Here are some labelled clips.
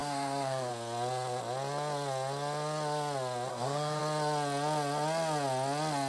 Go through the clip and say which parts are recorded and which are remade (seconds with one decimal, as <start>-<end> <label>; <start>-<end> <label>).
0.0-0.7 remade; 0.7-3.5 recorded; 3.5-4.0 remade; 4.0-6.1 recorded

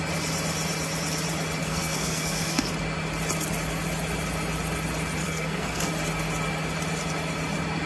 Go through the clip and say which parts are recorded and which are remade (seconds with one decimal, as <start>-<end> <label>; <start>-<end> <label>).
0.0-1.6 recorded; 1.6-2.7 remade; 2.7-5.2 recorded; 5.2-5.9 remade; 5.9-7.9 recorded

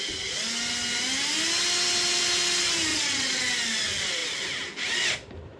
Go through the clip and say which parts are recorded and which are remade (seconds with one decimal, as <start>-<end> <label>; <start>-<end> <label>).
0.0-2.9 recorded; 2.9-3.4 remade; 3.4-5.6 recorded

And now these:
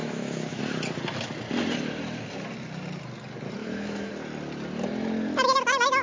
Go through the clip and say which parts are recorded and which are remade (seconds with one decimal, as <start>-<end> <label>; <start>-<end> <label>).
0.0-0.6 remade; 0.6-3.6 recorded; 3.6-4.1 remade; 4.1-6.0 recorded

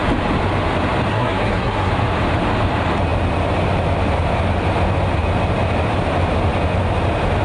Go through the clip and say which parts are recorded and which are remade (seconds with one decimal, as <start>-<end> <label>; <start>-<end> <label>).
0.0-1.1 recorded; 1.1-1.9 remade; 1.9-7.4 recorded